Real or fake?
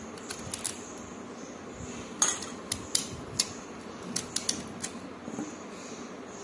real